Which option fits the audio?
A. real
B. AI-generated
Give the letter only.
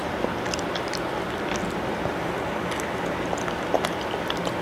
A